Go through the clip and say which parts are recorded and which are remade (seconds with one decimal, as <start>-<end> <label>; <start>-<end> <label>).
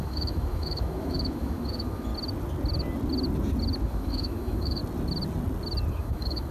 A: 0.0-2.1 remade; 2.1-3.8 recorded; 3.8-4.8 remade; 4.8-5.9 recorded; 5.9-6.5 remade